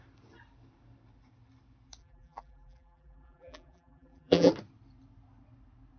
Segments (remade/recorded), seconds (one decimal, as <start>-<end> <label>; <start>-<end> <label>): 0.0-2.0 recorded; 2.0-4.5 remade; 4.5-6.0 recorded